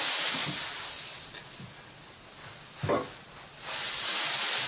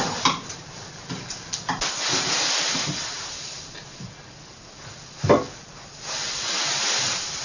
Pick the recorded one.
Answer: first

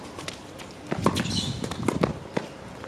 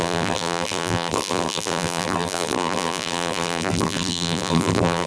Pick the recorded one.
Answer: first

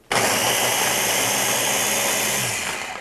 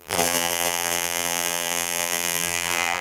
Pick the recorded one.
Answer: first